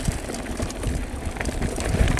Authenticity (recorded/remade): remade